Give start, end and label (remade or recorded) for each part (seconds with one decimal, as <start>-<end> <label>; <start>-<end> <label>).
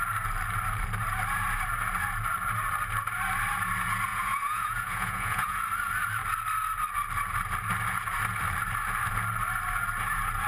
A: 0.0-4.1 recorded; 4.1-5.6 remade; 5.6-10.5 recorded